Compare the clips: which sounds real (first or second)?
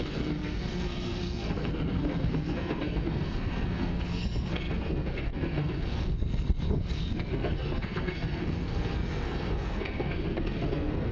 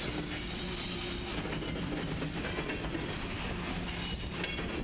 second